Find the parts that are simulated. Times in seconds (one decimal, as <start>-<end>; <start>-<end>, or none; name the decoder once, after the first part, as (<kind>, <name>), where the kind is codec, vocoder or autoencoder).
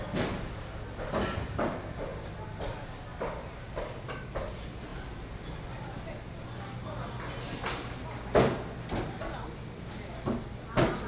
none